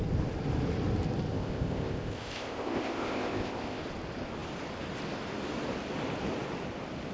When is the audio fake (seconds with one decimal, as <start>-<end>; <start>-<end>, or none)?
1.3-3.8